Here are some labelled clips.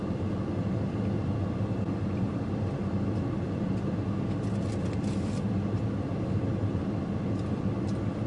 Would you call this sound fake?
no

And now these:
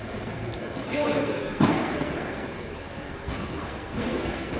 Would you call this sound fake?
yes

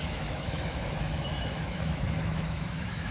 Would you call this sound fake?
yes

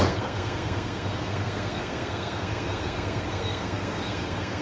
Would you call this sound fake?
yes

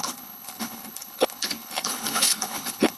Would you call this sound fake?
yes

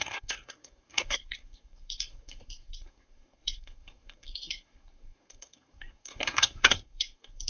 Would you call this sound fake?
yes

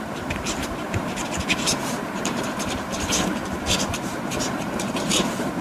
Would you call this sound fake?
yes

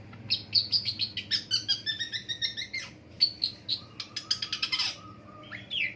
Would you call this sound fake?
no